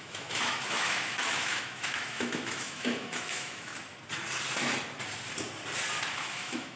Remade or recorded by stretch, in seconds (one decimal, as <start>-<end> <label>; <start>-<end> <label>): 0.0-3.7 remade; 3.7-6.2 recorded; 6.2-6.8 remade